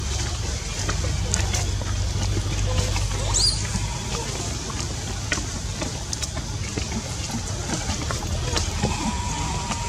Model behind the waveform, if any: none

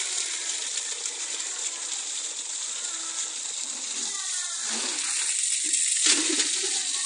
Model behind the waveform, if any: none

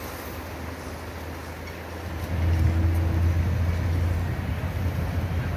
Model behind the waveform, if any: none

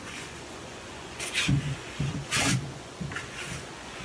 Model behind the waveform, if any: vocoder, Vocos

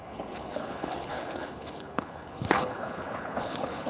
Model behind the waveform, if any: codec, HILCodec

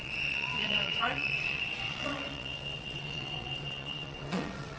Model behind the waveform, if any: vocoder, WaveNeXt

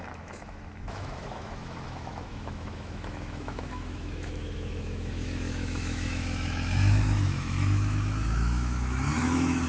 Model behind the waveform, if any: autoencoder, DAC-VAE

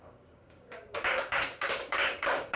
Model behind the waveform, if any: codec, DAC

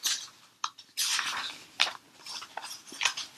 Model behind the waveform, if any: none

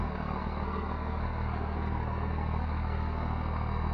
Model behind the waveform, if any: codec, SNAC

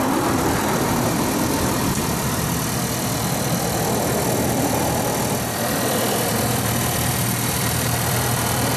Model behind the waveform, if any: vocoder, BigVGAN v2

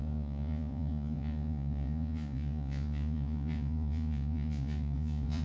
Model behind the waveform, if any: vocoder, Vocos